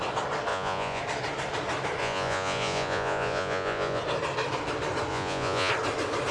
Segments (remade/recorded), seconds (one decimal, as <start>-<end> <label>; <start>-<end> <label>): 0.0-0.5 recorded; 0.5-1.0 remade; 1.0-2.0 recorded; 2.0-4.0 remade; 4.0-5.1 recorded; 5.1-5.7 remade; 5.7-6.3 recorded